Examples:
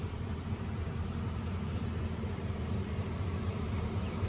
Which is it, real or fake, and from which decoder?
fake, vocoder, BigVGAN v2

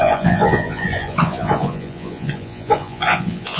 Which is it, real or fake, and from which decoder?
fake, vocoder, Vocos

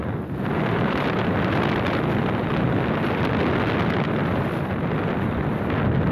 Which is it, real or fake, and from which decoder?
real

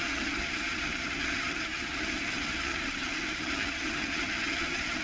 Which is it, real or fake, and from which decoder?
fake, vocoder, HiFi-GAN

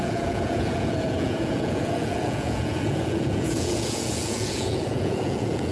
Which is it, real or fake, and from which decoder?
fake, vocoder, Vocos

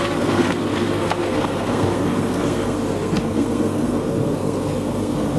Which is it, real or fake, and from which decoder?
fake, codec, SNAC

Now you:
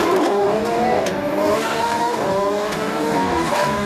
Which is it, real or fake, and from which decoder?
fake, codec, DAC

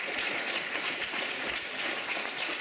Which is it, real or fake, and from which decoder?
fake, vocoder, Vocos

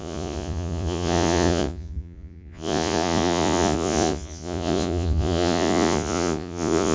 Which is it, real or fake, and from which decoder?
fake, vocoder, Vocos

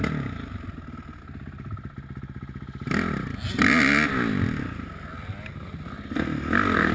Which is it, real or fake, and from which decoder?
real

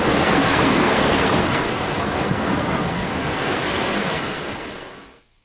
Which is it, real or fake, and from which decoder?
fake, codec, SNAC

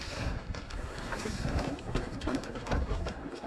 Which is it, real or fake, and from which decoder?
fake, codec, SNAC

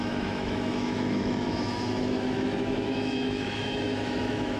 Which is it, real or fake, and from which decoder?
fake, autoencoder, DAC-VAE